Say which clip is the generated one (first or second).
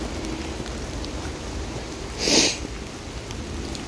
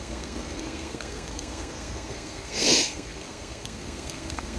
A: second